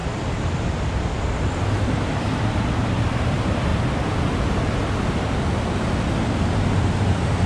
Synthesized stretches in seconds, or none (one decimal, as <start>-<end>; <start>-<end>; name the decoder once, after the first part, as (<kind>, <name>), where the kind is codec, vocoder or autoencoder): none

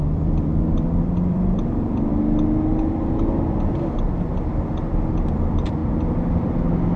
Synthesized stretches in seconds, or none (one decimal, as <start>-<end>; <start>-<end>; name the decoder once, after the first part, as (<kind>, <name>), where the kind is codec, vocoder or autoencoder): 0.0-2.1 (vocoder, BigVGAN v2); 4.0-7.0

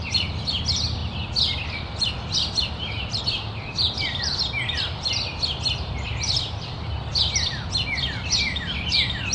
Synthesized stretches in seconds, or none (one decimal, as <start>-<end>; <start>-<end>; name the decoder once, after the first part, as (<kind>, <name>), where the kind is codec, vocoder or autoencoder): 1.0-3.2 (vocoder, BigVGAN v2)

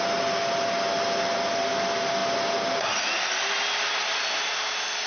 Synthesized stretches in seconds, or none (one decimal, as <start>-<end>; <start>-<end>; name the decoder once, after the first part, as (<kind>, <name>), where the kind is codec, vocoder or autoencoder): none

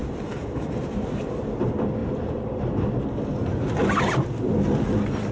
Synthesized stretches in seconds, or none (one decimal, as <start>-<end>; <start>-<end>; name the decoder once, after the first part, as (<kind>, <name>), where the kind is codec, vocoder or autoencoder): 0.0-1.5 (vocoder, BigVGAN v2); 2.0-2.9

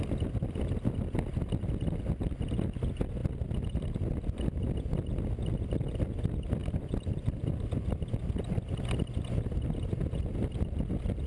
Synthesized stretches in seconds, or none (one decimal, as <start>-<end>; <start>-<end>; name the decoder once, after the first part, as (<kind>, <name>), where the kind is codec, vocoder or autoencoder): 6.6-7.1 (vocoder, BigVGAN v2)

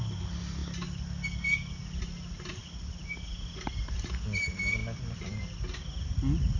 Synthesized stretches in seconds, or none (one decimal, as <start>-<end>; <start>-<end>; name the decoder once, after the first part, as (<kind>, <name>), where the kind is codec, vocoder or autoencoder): 4.8-5.4 (vocoder, BigVGAN v2)

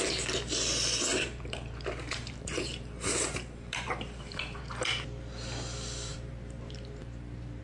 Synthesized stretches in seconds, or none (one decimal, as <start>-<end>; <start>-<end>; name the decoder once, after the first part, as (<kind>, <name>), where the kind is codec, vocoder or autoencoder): 1.1-4.6 (vocoder, BigVGAN v2); 6.1-7.6